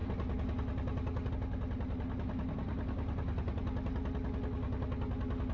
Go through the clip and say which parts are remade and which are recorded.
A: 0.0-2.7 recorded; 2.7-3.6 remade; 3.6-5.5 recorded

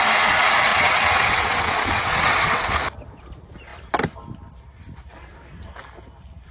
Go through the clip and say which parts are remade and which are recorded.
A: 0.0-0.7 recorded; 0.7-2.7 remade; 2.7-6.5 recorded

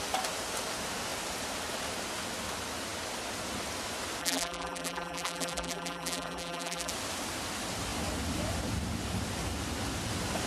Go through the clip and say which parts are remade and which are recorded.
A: 0.0-4.2 recorded; 4.2-6.9 remade; 6.9-10.5 recorded

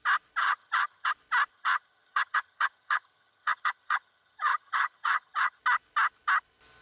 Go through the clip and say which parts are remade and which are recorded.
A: 0.0-0.4 recorded; 0.4-1.1 remade; 1.1-1.5 recorded; 1.5-5.6 remade; 5.6-6.8 recorded

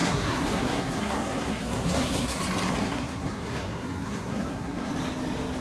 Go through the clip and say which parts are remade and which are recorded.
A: 0.0-2.4 remade; 2.4-2.8 recorded; 2.8-4.9 remade; 4.9-5.6 recorded

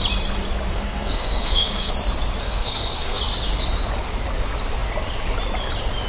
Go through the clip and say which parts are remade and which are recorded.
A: 0.0-0.7 recorded; 0.7-1.9 remade; 1.9-2.4 recorded; 2.4-3.2 remade; 3.2-6.1 recorded

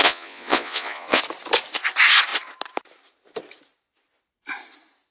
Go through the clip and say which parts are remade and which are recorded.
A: 0.0-1.2 remade; 1.2-5.1 recorded

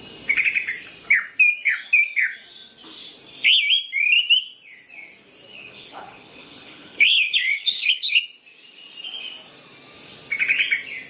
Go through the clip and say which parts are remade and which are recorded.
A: 0.0-5.5 recorded; 5.5-8.2 remade; 8.2-11.1 recorded